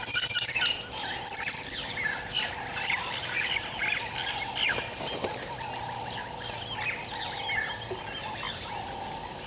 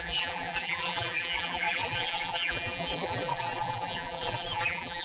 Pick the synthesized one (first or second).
second